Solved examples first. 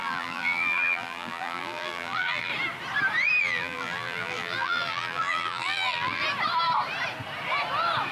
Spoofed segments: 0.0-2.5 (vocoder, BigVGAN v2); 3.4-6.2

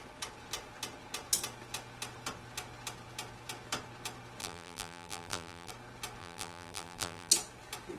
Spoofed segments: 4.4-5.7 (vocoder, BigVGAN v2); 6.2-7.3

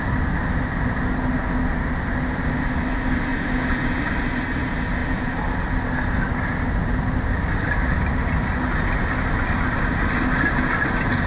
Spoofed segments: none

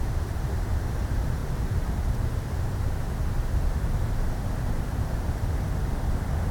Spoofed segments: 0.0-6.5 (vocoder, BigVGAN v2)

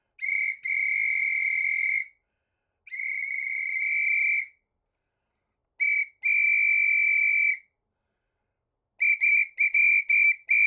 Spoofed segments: none

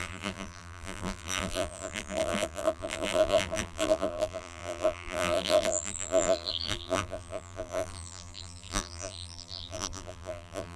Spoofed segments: 0.0-10.8 (vocoder, BigVGAN v2)

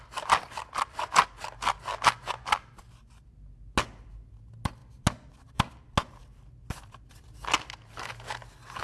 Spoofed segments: none